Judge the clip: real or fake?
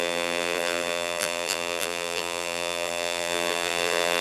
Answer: fake